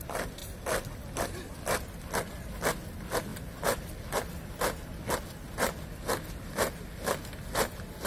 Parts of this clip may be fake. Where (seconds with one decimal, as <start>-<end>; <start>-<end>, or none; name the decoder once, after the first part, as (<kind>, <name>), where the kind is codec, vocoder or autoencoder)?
none